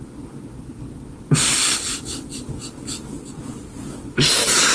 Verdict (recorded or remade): recorded